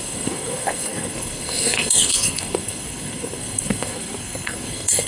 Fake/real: fake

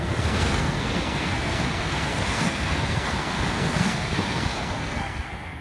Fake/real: fake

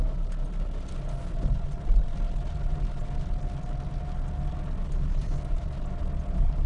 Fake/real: real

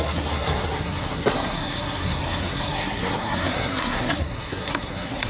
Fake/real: fake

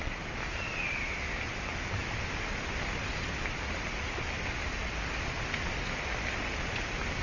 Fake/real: real